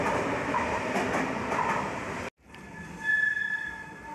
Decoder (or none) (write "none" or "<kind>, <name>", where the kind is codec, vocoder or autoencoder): none